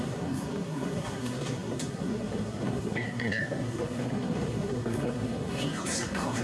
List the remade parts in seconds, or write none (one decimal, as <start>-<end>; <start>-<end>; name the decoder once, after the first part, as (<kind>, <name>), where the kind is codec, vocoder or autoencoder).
0.0-6.4 (codec, SNAC)